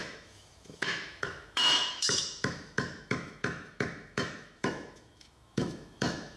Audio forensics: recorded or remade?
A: remade